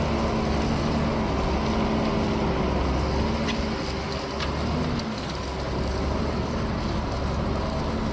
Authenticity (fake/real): real